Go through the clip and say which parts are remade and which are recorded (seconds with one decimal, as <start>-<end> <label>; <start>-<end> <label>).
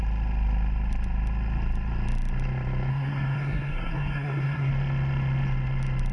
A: 0.0-2.9 recorded; 2.9-4.7 remade; 4.7-6.1 recorded